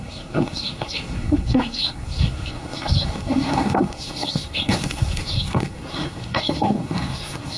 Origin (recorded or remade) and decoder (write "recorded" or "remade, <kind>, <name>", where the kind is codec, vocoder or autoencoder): remade, codec, SNAC